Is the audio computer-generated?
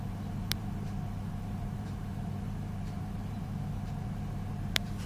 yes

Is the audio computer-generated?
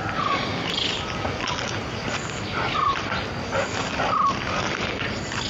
no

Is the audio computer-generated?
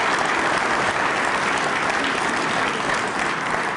no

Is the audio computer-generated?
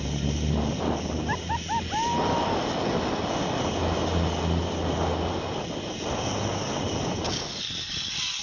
no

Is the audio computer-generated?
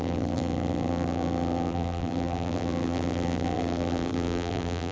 yes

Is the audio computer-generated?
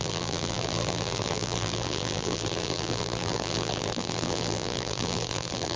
yes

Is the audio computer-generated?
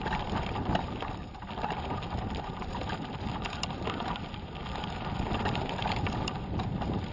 yes